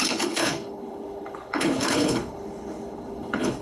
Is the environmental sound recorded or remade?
remade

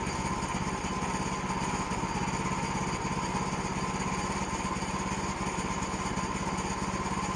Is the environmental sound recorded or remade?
recorded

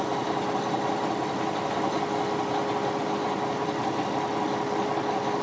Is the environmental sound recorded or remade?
recorded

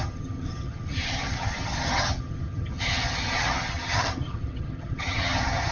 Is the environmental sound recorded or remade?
remade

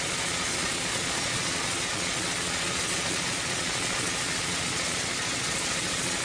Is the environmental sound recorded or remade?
remade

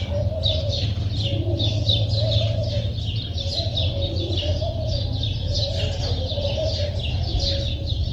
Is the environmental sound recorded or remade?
recorded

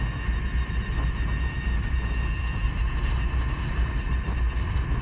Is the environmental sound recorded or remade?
recorded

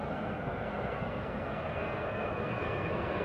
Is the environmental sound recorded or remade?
remade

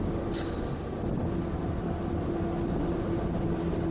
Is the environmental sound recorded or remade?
recorded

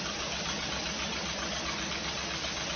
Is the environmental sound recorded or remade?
recorded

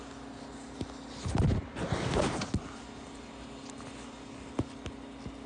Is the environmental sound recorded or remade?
recorded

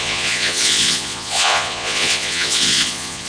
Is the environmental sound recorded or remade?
remade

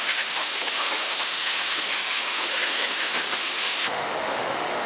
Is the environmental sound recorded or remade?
remade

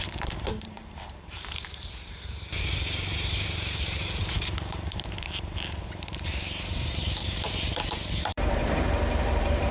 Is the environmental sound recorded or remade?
remade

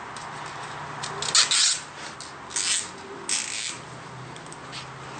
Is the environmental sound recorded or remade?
recorded